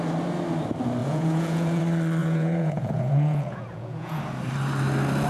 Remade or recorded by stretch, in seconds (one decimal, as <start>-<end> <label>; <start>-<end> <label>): 0.0-1.0 recorded; 1.0-1.8 remade; 1.8-2.2 recorded; 2.2-4.2 remade; 4.2-5.3 recorded